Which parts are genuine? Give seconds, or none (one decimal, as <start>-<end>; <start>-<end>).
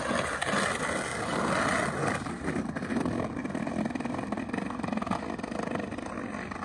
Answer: 0.0-6.6